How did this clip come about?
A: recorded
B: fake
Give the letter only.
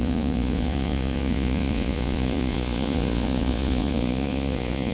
B